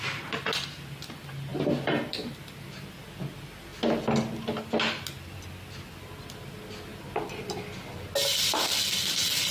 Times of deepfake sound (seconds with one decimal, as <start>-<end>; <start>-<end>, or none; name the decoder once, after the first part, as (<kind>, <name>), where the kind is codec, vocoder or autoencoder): 1.5-2.9 (vocoder, BigVGAN v2)